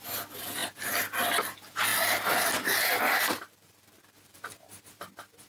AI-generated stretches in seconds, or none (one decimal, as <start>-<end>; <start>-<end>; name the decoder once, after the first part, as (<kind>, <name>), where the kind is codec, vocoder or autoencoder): 1.9-4.8 (vocoder, BigVGAN v2)